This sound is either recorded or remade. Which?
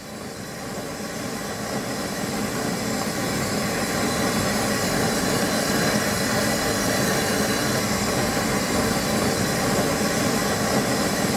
recorded